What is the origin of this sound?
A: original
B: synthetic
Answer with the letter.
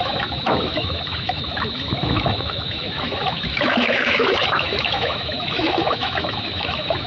B